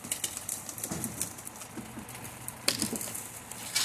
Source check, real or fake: real